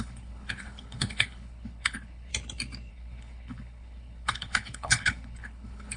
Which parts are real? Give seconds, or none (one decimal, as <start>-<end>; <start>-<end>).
2.3-2.9